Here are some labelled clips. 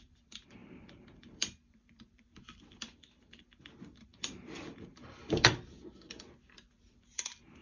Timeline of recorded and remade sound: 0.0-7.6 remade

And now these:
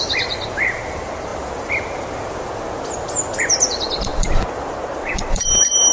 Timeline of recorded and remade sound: 0.0-1.3 remade; 1.3-3.4 recorded; 3.4-5.9 remade

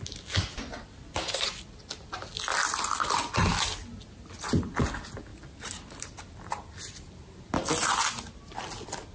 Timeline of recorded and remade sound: 0.0-9.1 recorded

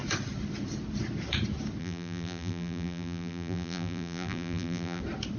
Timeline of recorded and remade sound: 0.0-1.8 recorded; 1.8-5.0 remade; 5.0-5.4 recorded

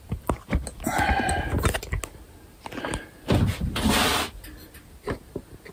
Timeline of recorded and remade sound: 0.0-5.7 recorded

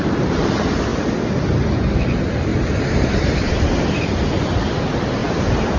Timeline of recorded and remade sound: 0.0-2.5 recorded; 2.5-4.0 remade; 4.0-5.8 recorded

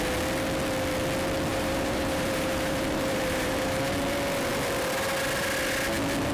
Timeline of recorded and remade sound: 0.0-1.5 recorded; 1.5-3.8 remade; 3.8-6.3 recorded